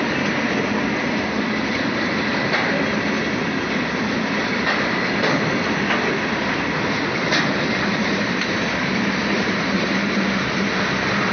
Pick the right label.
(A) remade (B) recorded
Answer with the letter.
B